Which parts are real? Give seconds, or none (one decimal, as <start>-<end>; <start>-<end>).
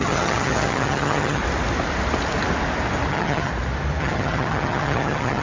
1.4-3.1; 3.5-4.0